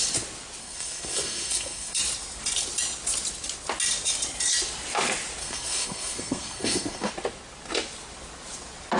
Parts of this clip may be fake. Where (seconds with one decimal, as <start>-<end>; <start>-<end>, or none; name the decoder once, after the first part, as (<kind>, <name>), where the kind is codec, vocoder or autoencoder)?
0.6-2.0 (codec, SNAC); 5.4-7.1